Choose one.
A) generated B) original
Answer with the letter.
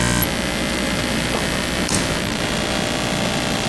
B